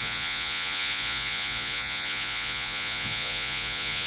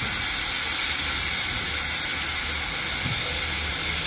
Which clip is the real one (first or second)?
second